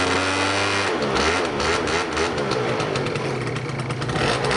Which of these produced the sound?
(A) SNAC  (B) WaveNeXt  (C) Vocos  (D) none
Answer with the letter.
D